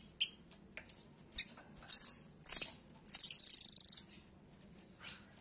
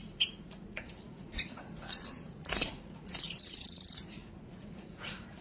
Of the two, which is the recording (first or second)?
first